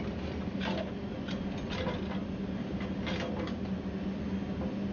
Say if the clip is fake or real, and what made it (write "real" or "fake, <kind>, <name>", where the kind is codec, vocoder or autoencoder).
real